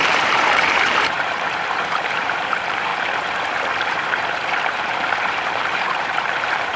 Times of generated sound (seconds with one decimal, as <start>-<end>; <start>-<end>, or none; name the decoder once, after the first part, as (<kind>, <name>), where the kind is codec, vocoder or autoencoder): 0.0-2.9 (vocoder, BigVGAN v2); 4.6-6.8